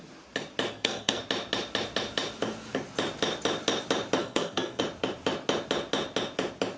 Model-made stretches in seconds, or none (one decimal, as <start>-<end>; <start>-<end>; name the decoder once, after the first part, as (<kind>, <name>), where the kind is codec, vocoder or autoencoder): 0.7-1.2 (codec, SNAC); 4.2-4.8